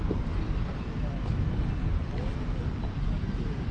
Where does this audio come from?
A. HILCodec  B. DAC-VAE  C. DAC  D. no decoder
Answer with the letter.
D